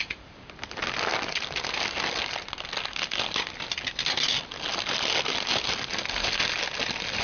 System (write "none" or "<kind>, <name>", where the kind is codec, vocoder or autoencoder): none